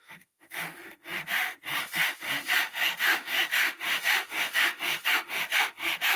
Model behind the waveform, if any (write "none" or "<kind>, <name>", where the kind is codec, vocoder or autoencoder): autoencoder, DAC-VAE